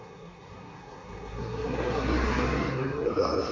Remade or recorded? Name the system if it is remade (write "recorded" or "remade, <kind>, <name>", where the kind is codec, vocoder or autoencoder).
remade, codec, SNAC